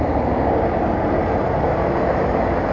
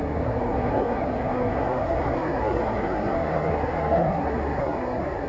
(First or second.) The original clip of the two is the first